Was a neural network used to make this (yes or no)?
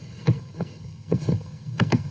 yes